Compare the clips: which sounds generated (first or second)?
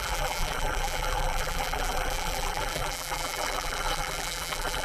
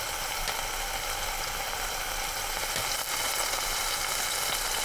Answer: first